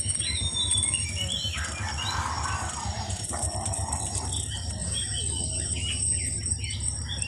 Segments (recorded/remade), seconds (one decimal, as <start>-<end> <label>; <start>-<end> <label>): 0.0-7.3 recorded